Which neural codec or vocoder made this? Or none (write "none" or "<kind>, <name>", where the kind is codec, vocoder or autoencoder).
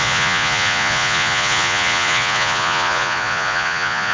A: vocoder, Vocos